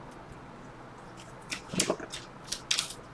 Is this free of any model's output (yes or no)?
yes